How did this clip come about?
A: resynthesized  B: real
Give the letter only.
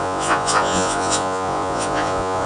A